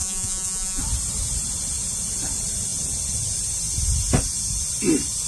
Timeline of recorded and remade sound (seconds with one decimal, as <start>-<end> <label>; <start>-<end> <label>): 0.0-0.8 remade; 0.8-5.3 recorded